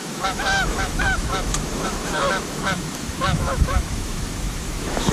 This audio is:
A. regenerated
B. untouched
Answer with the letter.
A